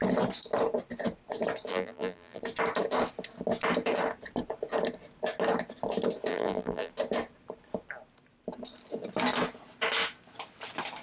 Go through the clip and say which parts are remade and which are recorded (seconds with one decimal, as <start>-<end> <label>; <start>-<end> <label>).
0.0-1.7 recorded; 1.7-2.4 remade; 2.4-6.3 recorded; 6.3-6.9 remade; 6.9-11.0 recorded